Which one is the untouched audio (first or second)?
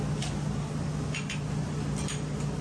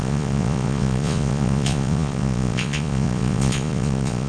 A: first